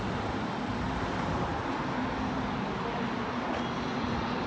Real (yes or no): yes